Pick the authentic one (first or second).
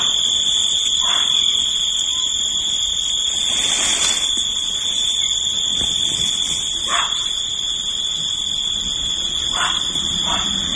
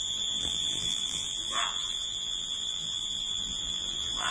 first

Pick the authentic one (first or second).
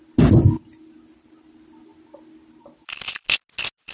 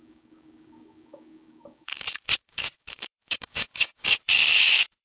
first